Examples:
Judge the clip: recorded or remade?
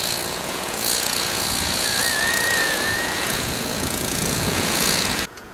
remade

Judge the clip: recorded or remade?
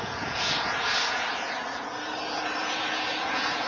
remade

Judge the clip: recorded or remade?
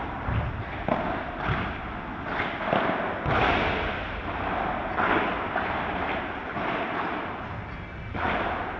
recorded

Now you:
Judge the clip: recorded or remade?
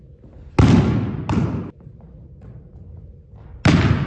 recorded